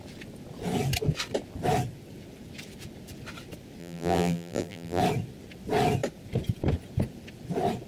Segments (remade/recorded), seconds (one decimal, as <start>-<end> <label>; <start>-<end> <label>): 0.0-3.8 recorded; 3.8-5.0 remade; 5.0-7.9 recorded